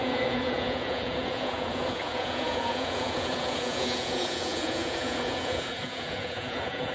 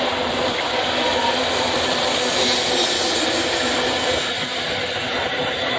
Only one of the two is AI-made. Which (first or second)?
first